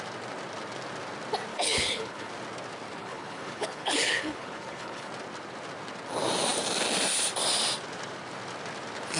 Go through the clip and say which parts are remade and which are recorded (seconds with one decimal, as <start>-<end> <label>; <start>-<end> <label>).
0.0-1.5 recorded; 1.5-2.3 remade; 2.3-3.0 recorded; 3.0-5.1 remade; 5.1-9.2 recorded